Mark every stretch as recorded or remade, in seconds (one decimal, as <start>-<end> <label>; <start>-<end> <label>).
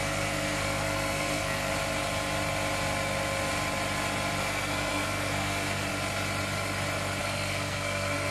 0.0-1.7 remade; 1.7-4.4 recorded; 4.4-5.9 remade; 5.9-7.2 recorded; 7.2-8.3 remade